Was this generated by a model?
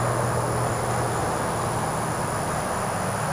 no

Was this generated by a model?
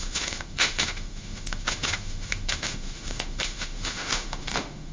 yes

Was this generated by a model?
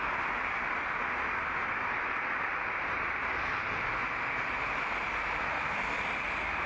no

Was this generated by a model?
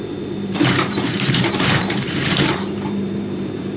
yes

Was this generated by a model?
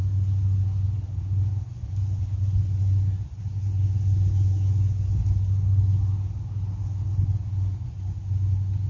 no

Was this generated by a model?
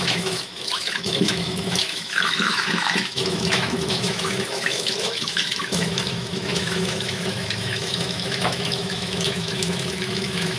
yes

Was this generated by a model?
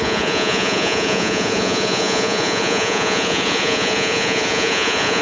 yes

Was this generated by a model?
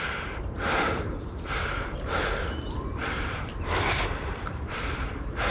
yes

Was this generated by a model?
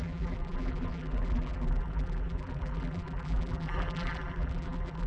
yes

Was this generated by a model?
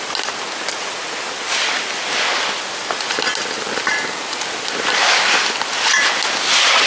no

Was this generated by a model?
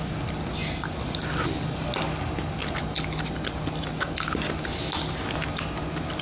no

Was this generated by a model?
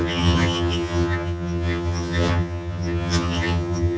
yes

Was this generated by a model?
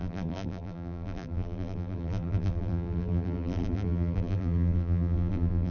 yes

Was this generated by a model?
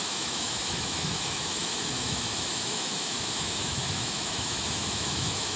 yes